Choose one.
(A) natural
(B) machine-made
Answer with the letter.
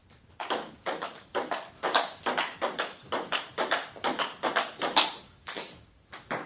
A